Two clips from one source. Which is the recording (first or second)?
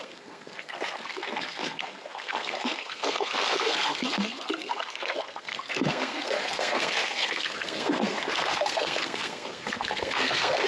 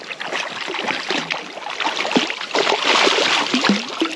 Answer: second